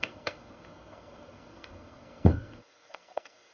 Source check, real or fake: fake